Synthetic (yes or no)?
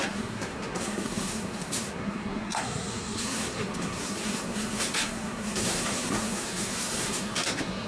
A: yes